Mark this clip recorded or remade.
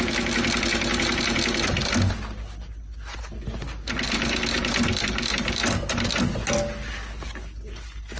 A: recorded